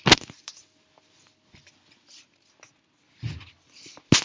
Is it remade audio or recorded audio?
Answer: recorded